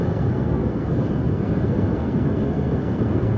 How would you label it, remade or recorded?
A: remade